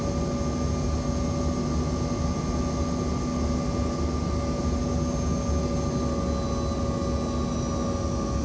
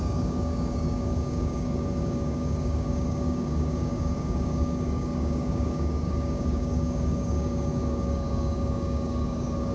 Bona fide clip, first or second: first